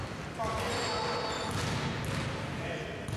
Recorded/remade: recorded